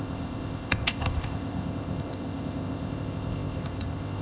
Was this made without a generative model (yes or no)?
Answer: no